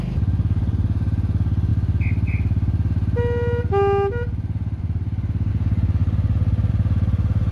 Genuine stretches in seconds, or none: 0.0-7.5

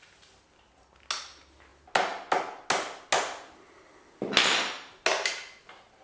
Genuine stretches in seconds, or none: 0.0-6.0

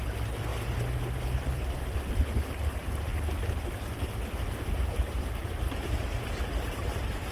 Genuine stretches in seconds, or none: 0.5-2.1; 3.1-3.8

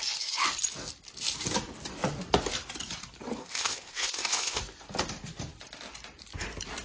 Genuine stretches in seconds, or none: 0.0-3.4; 4.6-6.8

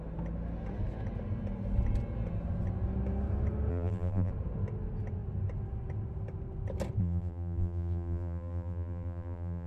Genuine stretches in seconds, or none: 0.0-3.7; 4.3-7.0

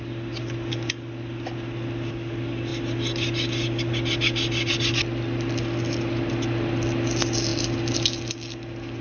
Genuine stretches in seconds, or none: 0.0-9.0

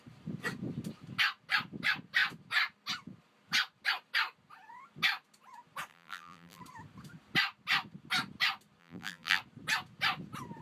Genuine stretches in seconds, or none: 0.0-5.9; 6.6-8.8; 9.4-10.6

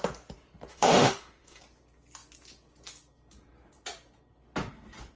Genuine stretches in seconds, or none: 0.0-0.7; 1.6-5.2